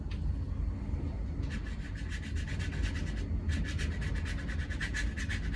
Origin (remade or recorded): recorded